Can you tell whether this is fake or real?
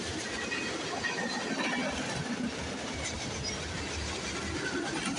real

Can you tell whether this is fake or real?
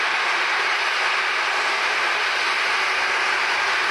real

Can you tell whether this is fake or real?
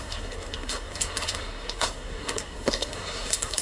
fake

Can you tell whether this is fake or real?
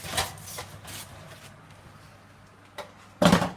real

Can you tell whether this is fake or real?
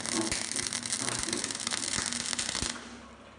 real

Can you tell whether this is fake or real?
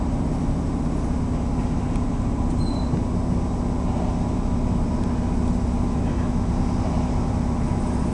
real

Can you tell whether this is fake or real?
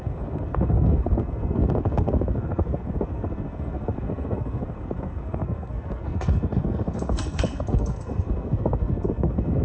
fake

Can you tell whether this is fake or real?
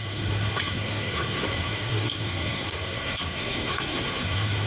fake